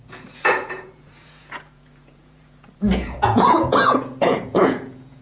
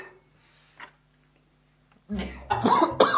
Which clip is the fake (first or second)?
first